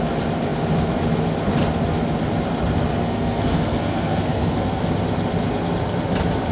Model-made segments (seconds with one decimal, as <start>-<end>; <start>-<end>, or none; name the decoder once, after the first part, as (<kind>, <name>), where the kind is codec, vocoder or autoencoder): 2.9-4.8 (codec, SNAC)